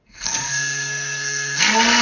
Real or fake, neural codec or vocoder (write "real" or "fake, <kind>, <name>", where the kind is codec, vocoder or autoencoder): fake, codec, SNAC